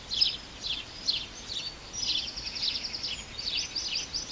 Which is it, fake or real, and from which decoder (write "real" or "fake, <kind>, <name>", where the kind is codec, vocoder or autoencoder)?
real